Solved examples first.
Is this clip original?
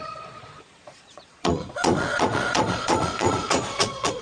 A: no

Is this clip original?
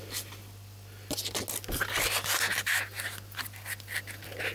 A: yes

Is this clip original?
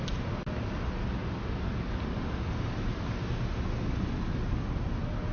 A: yes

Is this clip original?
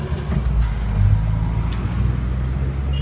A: yes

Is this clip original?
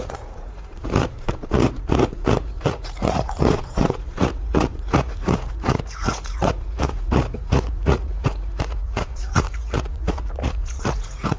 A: no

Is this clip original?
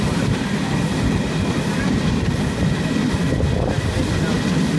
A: yes